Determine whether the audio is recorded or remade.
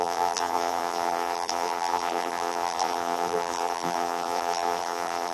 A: remade